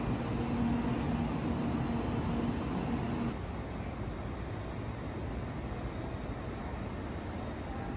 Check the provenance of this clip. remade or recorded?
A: recorded